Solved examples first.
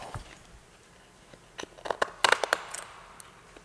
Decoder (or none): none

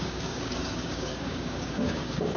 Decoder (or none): codec, DAC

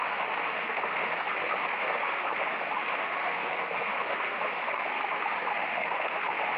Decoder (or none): autoencoder, DAC-VAE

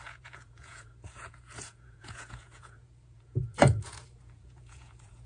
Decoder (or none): vocoder, Vocos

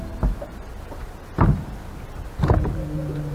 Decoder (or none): none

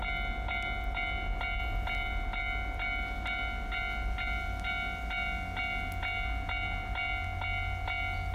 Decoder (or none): none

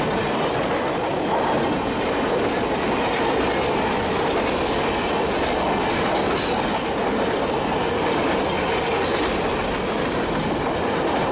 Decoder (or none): none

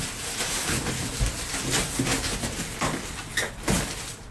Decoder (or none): none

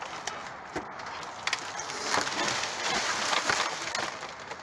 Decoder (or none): none